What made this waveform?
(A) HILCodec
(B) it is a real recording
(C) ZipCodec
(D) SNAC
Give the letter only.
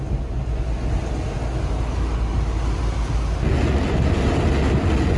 B